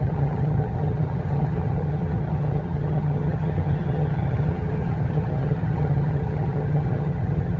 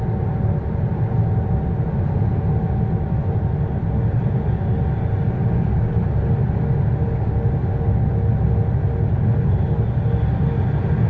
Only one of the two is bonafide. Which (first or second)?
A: second